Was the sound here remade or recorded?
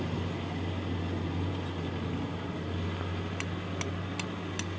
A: recorded